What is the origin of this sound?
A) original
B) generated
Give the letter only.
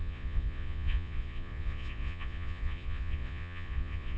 B